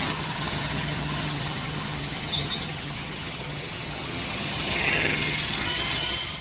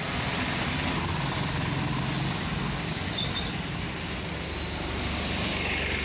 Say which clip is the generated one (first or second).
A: first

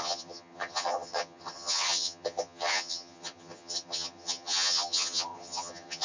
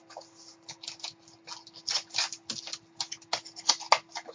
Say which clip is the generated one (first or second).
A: first